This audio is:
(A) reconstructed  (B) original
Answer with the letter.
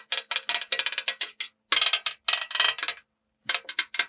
B